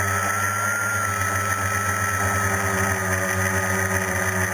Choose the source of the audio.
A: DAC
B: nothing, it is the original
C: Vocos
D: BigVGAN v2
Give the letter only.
B